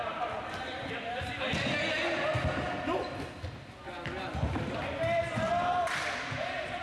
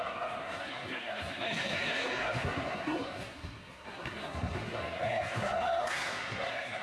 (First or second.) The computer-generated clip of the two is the second